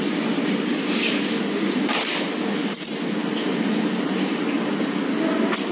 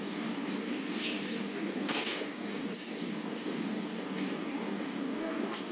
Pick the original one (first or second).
first